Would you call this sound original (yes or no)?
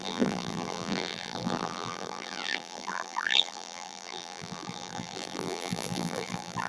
no